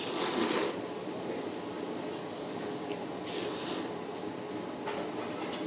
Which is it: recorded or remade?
recorded